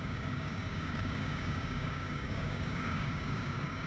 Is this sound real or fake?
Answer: fake